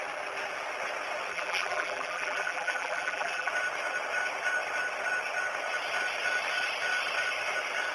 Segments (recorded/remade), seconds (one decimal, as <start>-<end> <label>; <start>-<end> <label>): 0.0-1.3 recorded; 1.3-3.5 remade; 3.5-7.9 recorded

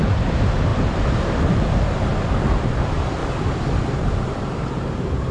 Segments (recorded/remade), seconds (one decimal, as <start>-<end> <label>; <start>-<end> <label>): 0.0-3.2 remade; 3.2-3.8 recorded; 3.8-5.3 remade

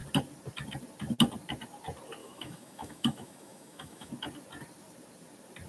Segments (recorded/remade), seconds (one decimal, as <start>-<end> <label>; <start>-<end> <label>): 0.0-2.2 recorded; 2.2-4.1 remade; 4.1-5.7 recorded

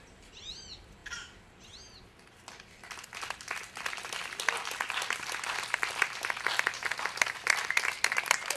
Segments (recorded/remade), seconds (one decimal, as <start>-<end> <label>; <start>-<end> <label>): 0.0-8.6 recorded